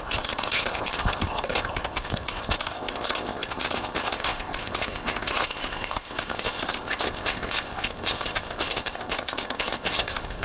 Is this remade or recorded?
remade